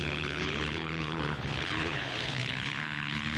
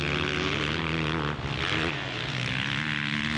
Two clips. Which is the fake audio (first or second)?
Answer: first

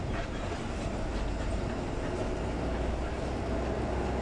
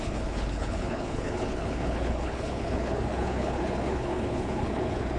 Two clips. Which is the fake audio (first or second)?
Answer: second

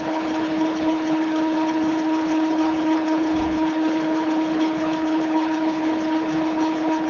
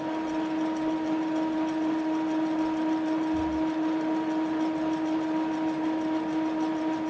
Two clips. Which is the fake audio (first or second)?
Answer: first